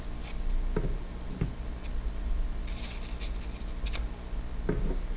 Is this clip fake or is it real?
real